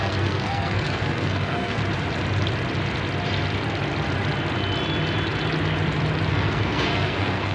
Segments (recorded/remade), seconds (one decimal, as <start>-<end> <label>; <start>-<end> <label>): 0.0-1.8 remade; 1.8-6.3 recorded; 6.3-7.5 remade